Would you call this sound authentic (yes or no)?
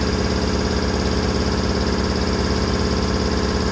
yes